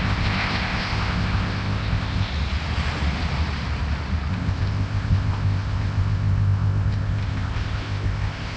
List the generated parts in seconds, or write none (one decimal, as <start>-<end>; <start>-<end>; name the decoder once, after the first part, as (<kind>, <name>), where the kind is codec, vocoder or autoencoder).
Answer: 0.0-2.3 (codec, ZipCodec); 4.3-8.6